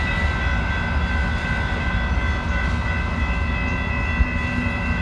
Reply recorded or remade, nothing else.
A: recorded